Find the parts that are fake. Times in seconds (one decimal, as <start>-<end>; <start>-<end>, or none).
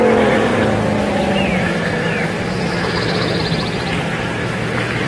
1.6-3.4; 4.4-5.1